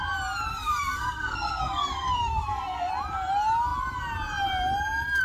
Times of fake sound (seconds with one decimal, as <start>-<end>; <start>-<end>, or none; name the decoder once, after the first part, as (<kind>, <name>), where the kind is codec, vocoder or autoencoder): 0.5-2.9 (codec, SNAC)